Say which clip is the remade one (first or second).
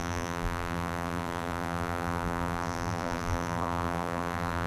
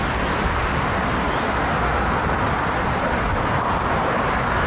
first